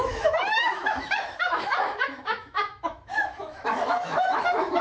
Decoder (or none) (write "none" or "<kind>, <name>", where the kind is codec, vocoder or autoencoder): autoencoder, DAC-VAE